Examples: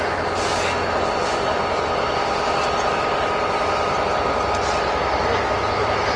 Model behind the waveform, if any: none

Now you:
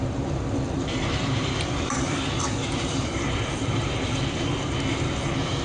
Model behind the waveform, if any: vocoder, BigVGAN v2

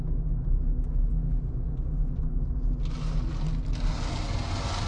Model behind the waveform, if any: none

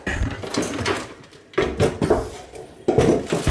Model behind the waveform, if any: none